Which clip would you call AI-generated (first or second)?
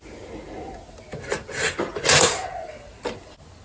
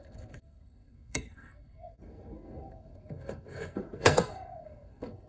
second